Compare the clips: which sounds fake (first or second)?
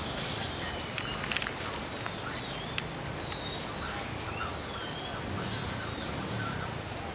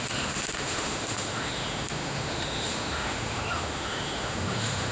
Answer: second